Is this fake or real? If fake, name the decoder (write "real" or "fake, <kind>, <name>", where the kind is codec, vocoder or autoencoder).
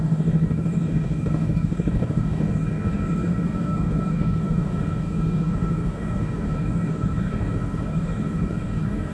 fake, codec, DAC